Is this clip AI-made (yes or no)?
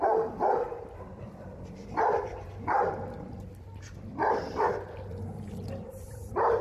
yes